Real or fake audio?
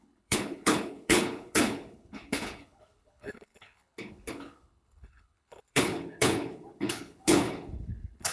fake